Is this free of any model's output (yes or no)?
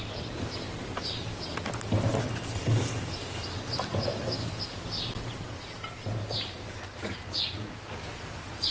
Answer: yes